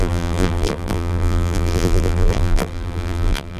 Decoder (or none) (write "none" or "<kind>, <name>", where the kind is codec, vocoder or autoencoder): vocoder, BigVGAN v2